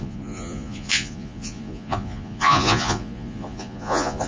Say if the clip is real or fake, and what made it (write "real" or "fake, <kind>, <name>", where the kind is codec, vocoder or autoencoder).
fake, vocoder, Vocos